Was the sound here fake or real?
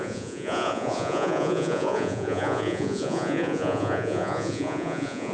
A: fake